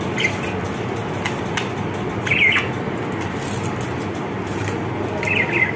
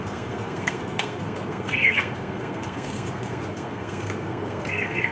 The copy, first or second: second